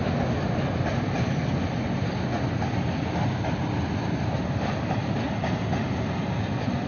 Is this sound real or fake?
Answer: real